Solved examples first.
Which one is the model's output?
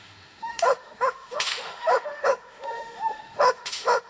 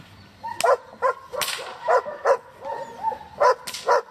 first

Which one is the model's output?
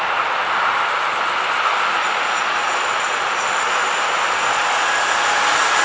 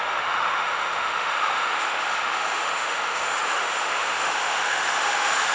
second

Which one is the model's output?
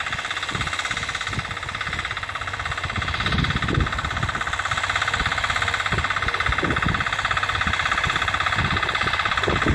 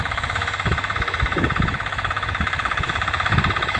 second